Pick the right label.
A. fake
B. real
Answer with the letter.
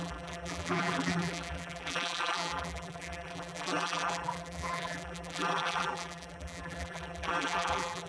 A